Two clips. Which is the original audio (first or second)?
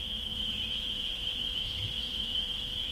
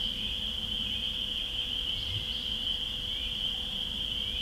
second